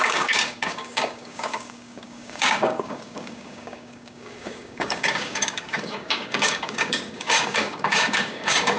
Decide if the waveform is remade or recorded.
remade